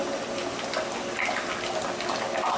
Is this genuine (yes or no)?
yes